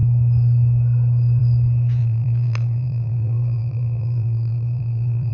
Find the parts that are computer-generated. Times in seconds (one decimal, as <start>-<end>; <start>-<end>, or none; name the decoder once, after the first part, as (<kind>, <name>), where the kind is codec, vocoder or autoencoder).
2.0-5.3 (vocoder, BigVGAN v2)